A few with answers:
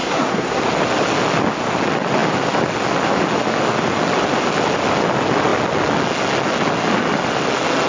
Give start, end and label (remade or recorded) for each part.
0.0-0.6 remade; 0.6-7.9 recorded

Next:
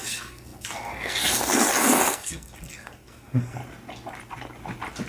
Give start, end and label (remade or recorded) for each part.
0.0-3.6 remade; 3.6-5.1 recorded

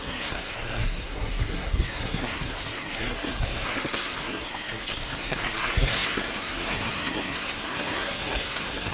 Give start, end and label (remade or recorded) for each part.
0.0-8.9 remade

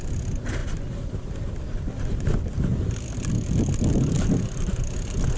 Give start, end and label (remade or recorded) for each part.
0.0-5.4 recorded